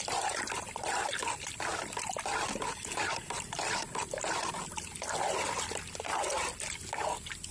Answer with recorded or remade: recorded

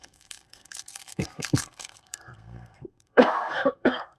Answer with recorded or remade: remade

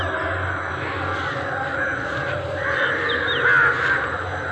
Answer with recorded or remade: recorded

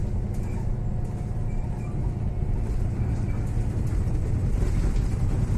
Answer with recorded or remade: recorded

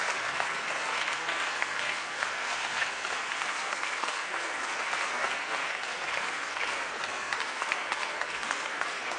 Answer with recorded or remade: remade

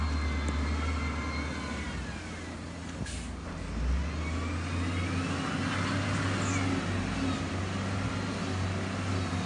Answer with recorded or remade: recorded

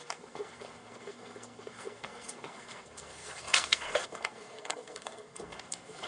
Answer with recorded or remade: remade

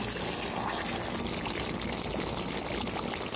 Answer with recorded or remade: recorded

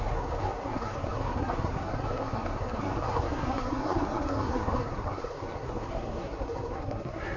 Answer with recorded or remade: remade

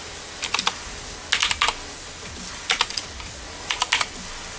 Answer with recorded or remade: recorded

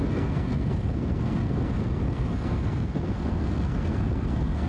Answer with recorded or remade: remade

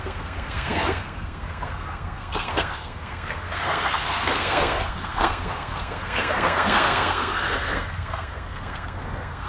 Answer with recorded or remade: remade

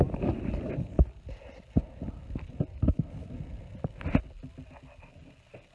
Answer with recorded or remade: recorded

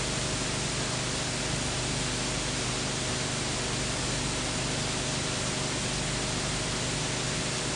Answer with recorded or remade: recorded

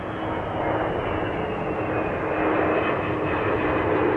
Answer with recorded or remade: recorded